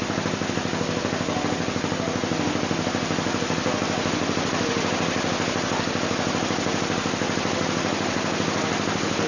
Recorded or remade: recorded